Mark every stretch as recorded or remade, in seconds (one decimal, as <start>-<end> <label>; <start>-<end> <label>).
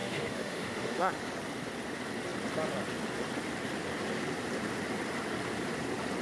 0.0-1.2 remade; 1.2-6.2 recorded